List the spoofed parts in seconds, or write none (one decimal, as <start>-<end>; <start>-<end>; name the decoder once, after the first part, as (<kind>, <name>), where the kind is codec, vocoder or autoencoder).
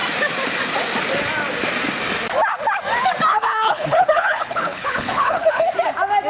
3.3-5.7 (codec, HILCodec)